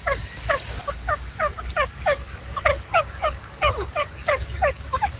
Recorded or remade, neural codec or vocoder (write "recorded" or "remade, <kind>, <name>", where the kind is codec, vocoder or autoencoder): remade, codec, DAC